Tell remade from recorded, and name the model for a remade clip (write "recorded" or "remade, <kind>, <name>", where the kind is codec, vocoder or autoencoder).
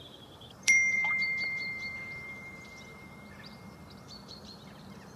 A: remade, vocoder, BigVGAN v2